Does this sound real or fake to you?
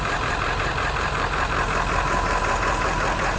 fake